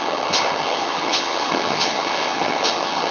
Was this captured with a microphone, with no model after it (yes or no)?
no